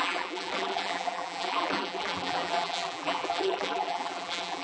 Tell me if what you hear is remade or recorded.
remade